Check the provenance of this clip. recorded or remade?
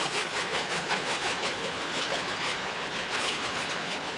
remade